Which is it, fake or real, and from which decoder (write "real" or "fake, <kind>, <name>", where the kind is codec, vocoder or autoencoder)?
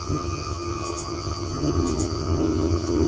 fake, vocoder, HiFi-GAN